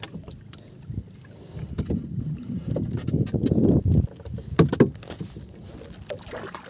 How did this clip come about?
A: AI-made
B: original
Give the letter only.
B